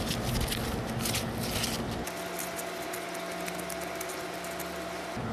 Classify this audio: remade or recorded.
recorded